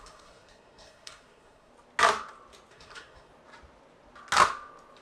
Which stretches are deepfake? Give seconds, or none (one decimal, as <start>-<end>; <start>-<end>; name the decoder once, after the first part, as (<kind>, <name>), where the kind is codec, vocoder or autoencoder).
0.0-1.7 (codec, SNAC); 2.7-3.3